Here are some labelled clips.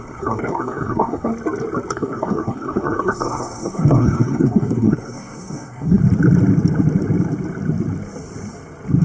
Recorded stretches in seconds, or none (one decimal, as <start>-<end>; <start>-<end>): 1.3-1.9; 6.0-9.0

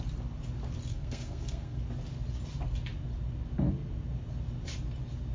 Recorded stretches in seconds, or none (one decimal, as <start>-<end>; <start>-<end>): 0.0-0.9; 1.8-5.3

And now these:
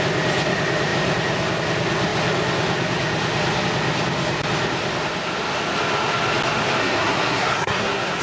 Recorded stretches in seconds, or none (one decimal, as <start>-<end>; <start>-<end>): 0.0-6.8

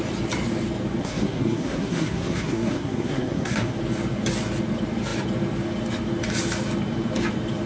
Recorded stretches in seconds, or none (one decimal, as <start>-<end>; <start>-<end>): 0.0-1.0; 3.8-7.7

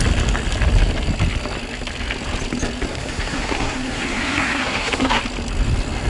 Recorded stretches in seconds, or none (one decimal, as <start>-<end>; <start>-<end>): 0.0-2.9; 5.2-6.1